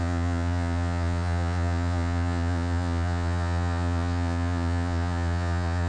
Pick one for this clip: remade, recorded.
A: remade